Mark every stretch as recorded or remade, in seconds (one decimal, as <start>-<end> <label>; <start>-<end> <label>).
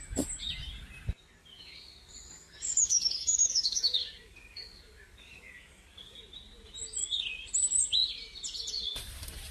0.0-1.4 recorded; 1.4-6.2 remade; 6.2-9.5 recorded